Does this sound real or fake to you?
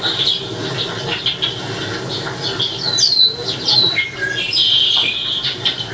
real